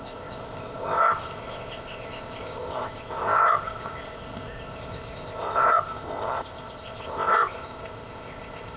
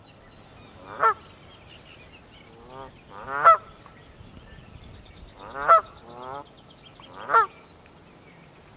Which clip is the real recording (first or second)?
second